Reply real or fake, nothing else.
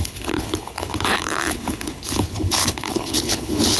fake